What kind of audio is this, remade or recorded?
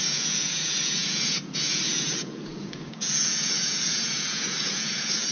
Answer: remade